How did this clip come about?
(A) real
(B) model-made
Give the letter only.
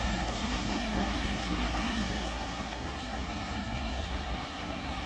B